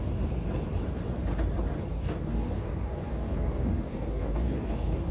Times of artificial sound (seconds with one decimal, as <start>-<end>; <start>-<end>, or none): 1.9-5.1